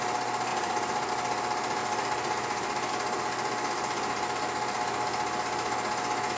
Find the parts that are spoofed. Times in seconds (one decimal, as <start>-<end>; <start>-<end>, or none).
0.5-1.1; 1.8-2.9